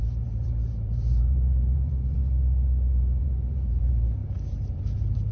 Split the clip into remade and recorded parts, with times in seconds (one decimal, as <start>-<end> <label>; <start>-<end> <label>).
0.0-2.2 remade; 2.2-3.2 recorded; 3.2-5.3 remade